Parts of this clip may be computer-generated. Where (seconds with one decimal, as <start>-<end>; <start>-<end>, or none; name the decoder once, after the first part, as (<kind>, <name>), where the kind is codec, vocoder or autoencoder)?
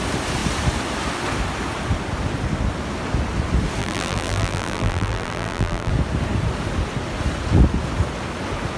3.8-5.9 (vocoder, BigVGAN v2)